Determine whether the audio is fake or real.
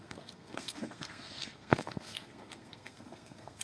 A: fake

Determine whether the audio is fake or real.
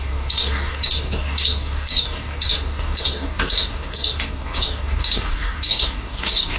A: fake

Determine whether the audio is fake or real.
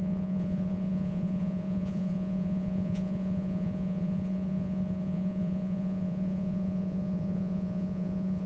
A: fake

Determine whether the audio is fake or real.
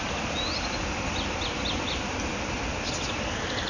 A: real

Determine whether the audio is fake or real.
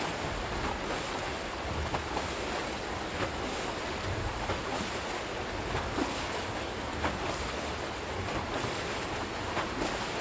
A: real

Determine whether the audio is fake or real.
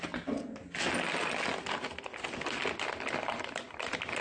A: real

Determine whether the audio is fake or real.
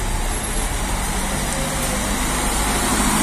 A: real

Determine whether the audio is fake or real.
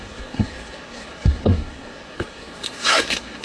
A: fake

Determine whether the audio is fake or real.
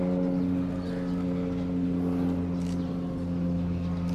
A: real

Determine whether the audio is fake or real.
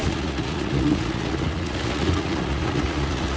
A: fake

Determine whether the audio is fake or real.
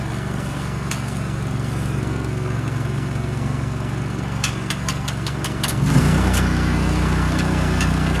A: fake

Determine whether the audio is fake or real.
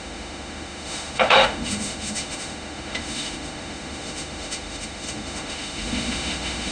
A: fake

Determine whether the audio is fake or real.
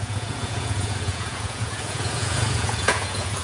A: fake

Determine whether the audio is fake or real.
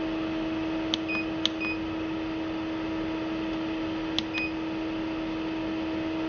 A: real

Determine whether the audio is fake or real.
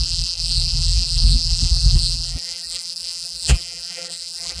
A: fake